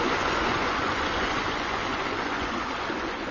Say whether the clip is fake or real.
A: fake